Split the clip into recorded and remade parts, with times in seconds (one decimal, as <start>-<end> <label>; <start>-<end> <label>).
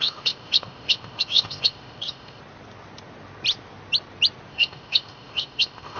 0.0-2.4 remade; 2.4-4.5 recorded; 4.5-6.0 remade